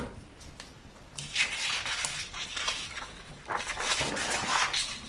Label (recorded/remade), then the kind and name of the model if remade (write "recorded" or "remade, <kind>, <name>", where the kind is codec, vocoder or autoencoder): recorded